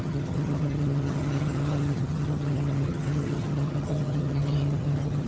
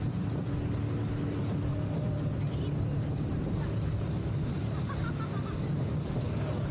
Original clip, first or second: second